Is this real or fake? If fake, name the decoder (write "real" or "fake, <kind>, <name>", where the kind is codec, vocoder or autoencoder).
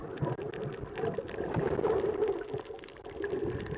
real